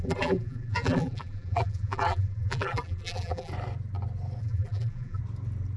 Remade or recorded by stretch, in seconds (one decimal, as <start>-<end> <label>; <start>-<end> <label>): 0.0-3.5 remade; 3.5-4.4 recorded; 4.4-5.2 remade; 5.2-5.8 recorded